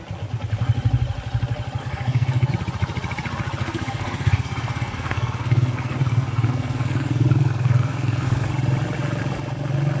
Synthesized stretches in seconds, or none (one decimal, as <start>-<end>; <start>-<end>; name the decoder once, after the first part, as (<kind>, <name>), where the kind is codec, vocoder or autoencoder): 1.8-2.5 (codec, SNAC); 3.6-8.5